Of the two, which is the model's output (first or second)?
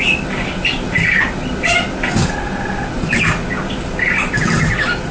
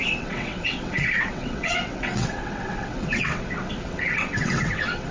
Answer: second